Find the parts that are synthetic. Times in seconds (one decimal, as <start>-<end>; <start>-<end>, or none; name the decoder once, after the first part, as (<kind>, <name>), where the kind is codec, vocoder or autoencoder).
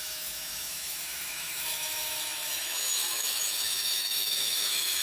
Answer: 0.0-5.0 (autoencoder, DAC-VAE)